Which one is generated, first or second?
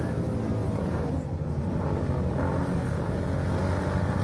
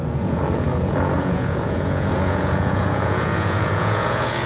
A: second